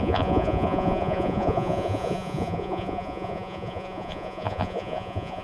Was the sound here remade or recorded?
remade